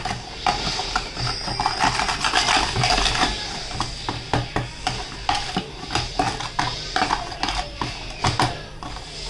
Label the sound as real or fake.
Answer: real